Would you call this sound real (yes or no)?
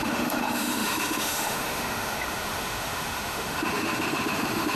no